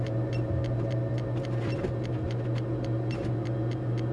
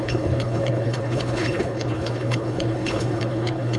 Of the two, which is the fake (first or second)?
second